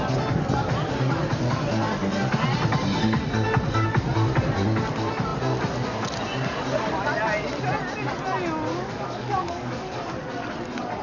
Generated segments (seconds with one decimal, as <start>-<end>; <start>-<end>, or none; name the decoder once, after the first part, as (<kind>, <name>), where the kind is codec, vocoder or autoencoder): 8.7-10.0 (codec, DAC)